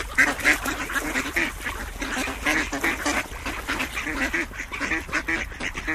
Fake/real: real